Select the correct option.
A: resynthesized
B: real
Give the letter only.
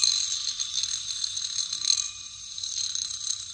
B